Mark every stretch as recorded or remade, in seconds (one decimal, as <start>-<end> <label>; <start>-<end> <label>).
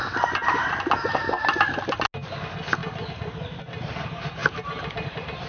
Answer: 0.0-4.4 recorded; 4.4-5.5 remade